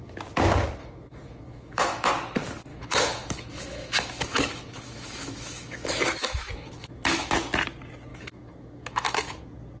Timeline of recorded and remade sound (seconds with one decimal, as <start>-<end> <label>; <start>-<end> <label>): 0.0-0.8 recorded; 0.8-2.1 remade; 2.1-2.7 recorded; 2.7-7.3 remade; 7.3-8.1 recorded; 8.1-9.4 remade; 9.4-9.8 recorded